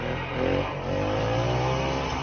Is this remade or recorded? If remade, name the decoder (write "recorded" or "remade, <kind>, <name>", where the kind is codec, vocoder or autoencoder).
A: recorded